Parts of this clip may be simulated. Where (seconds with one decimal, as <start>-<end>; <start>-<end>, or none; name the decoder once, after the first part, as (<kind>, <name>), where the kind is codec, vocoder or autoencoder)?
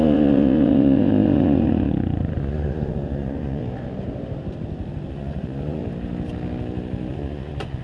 0.0-3.6 (vocoder, Vocos); 5.1-5.8; 7.1-7.8